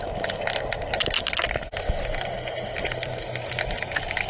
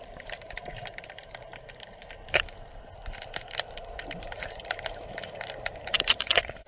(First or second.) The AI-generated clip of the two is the second